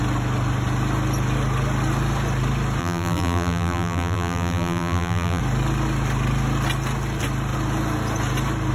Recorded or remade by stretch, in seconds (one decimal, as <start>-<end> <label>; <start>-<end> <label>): 0.0-2.8 recorded; 2.8-5.4 remade; 5.4-8.7 recorded